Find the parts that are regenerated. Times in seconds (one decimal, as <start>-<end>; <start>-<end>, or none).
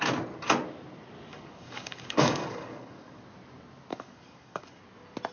1.3-3.2; 3.9-4.8